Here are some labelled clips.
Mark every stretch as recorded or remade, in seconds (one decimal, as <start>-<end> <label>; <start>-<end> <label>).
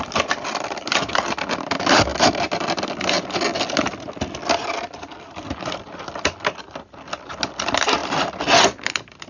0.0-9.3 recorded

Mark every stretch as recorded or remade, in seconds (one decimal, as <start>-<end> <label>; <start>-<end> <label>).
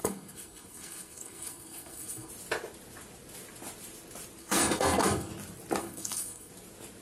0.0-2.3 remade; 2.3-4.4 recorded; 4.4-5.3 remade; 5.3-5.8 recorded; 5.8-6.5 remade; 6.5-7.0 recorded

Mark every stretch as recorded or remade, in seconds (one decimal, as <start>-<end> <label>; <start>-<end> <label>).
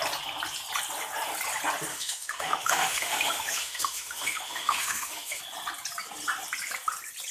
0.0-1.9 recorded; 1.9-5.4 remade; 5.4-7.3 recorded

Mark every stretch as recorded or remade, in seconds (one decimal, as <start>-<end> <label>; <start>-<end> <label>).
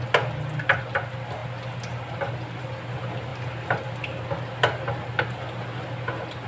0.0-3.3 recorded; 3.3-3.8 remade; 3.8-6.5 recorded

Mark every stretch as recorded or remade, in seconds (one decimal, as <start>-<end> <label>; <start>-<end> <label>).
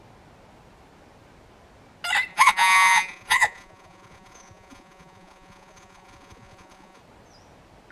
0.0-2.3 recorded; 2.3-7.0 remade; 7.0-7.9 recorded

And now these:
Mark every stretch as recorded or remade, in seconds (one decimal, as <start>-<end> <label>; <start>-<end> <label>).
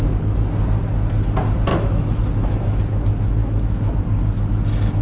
0.0-1.7 recorded; 1.7-2.8 remade; 2.8-3.4 recorded; 3.4-4.0 remade; 4.0-5.0 recorded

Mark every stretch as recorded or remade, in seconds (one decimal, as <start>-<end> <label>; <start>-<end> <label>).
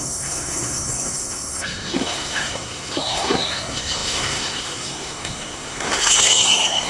0.0-6.9 remade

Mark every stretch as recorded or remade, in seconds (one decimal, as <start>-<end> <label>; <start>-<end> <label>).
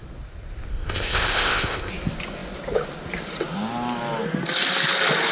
0.0-0.7 recorded; 0.7-1.9 remade; 1.9-5.3 recorded